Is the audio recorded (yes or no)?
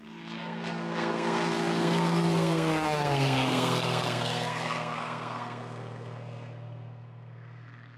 no